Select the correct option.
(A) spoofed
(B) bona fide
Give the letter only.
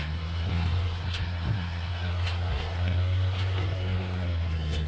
A